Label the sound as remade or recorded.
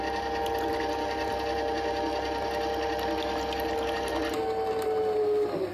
recorded